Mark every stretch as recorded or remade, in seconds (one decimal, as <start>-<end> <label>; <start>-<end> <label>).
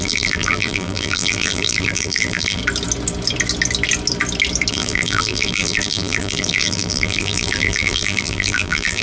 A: 0.0-2.6 remade; 2.6-4.7 recorded; 4.7-9.0 remade